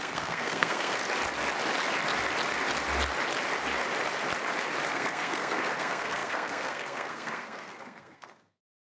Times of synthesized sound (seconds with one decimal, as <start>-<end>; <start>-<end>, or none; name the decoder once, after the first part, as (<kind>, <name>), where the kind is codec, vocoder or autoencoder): 0.0-1.0 (codec, SNAC); 4.9-8.9